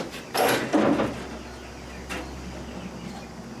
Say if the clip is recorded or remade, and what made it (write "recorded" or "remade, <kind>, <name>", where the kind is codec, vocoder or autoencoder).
recorded